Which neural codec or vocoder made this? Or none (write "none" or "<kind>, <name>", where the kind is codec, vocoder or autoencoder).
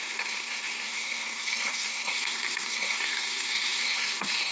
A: codec, SNAC